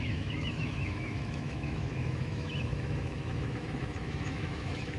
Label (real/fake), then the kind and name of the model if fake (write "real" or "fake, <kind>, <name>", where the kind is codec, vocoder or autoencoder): fake, autoencoder, DAC-VAE